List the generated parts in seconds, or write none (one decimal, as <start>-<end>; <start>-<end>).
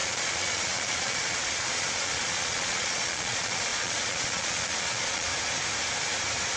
0.0-5.3